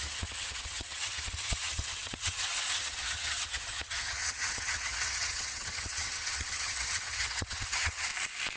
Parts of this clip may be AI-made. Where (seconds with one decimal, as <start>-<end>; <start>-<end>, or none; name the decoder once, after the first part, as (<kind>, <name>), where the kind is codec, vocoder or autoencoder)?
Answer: 0.0-8.1 (vocoder, HiFi-GAN)